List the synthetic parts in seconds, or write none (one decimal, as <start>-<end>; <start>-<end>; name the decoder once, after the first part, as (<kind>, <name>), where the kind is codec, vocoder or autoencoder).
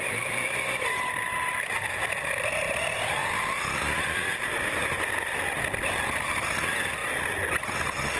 none